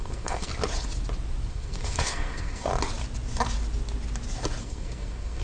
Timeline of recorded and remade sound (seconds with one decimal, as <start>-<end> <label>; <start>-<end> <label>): 0.0-0.5 remade; 0.5-1.5 recorded; 1.5-2.7 remade; 2.7-4.6 recorded; 4.6-5.4 remade